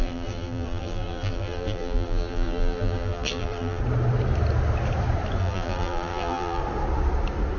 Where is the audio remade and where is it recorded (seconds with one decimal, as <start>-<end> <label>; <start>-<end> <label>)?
0.0-3.8 remade; 3.8-5.4 recorded; 5.4-6.6 remade; 6.6-7.6 recorded